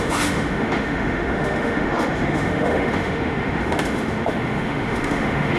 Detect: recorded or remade remade